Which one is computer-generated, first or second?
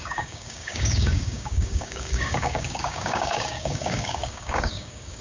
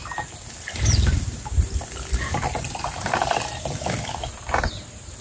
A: first